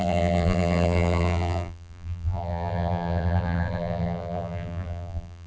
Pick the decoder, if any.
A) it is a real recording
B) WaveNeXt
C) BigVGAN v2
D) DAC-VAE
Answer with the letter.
C